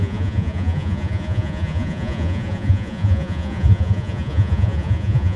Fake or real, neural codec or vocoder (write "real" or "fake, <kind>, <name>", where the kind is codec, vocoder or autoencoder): fake, vocoder, Vocos